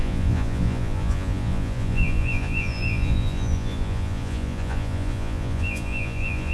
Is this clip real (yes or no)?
no